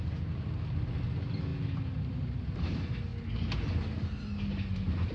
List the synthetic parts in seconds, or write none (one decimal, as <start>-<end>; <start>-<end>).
none